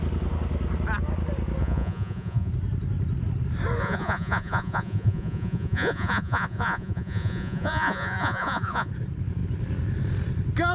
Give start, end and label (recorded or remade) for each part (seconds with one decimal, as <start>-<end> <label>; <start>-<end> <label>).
0.0-1.6 recorded; 1.6-2.5 remade; 2.5-3.8 recorded; 3.8-8.9 remade; 8.9-10.7 recorded